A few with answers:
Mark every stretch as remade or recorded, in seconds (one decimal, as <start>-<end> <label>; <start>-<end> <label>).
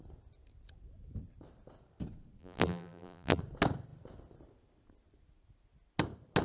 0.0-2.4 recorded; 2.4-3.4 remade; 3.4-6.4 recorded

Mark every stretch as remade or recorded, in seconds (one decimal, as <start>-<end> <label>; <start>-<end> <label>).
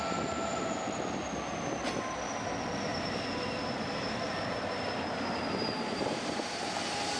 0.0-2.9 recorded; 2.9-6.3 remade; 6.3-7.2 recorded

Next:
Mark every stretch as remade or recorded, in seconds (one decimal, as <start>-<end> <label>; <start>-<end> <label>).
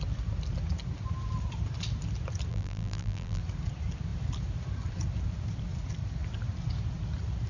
0.0-2.5 recorded; 2.5-3.4 remade; 3.4-7.5 recorded